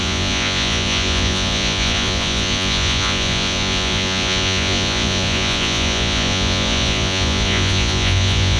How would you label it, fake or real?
fake